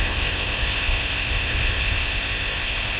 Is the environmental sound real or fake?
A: fake